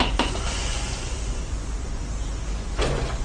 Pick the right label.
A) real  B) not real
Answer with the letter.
B